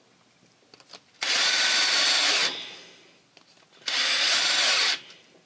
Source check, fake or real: real